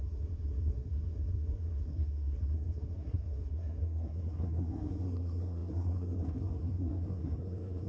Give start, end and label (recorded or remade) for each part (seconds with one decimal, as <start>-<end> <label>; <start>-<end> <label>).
0.0-7.9 remade